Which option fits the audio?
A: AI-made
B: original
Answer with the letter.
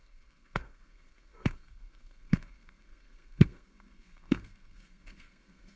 A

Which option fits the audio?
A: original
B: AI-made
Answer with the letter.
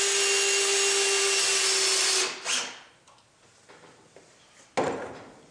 A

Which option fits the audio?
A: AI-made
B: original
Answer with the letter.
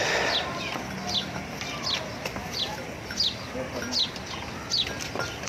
B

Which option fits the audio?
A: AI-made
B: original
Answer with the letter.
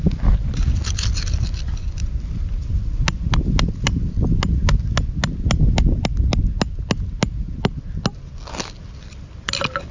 B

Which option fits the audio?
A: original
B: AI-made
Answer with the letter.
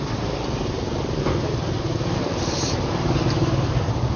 B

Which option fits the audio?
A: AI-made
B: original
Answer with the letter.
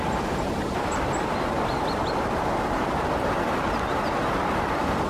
B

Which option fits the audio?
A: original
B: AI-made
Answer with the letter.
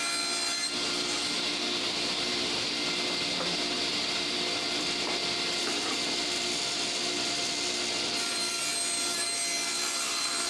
A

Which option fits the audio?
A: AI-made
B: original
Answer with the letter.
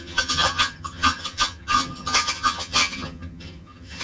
A